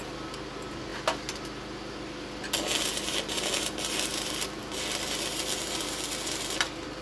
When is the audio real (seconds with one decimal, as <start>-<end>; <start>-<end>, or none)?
0.0-7.0

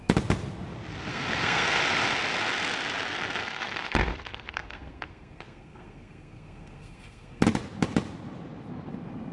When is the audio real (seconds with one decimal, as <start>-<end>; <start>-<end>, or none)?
0.0-1.1; 1.8-3.4; 7.4-9.3

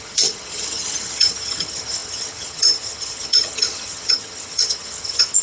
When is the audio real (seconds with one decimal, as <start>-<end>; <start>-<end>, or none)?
none

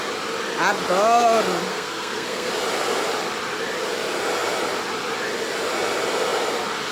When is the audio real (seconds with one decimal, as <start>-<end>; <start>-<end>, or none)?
0.0-1.7; 2.5-6.9

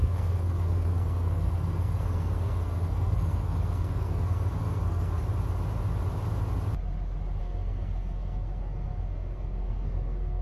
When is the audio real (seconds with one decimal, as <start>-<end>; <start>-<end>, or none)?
5.2-7.4

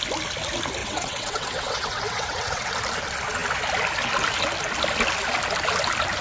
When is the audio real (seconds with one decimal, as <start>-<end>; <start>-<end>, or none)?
0.0-0.8; 2.7-6.2